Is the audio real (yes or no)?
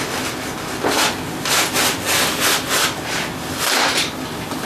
yes